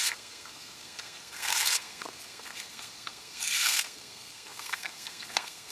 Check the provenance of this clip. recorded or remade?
remade